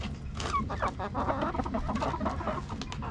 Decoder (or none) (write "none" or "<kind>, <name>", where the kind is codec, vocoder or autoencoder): none